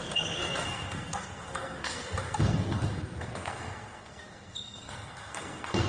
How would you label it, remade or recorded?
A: remade